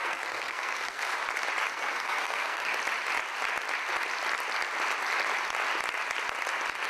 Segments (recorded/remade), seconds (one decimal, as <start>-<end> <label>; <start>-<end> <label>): 0.0-1.1 remade; 1.1-1.7 recorded; 1.7-2.7 remade; 2.7-6.9 recorded